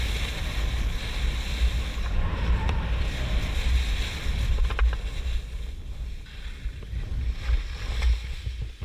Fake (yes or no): no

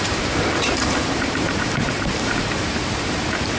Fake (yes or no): yes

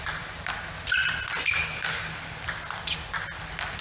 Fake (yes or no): no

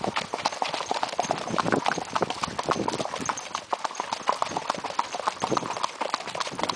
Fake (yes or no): no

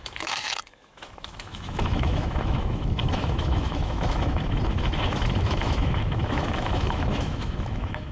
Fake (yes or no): yes